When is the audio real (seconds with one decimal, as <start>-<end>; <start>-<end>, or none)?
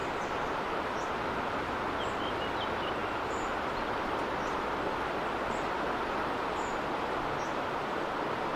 1.6-3.0; 7.5-8.6